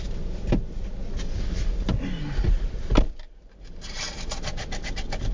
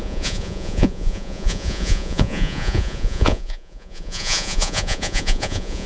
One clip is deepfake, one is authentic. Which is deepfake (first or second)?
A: second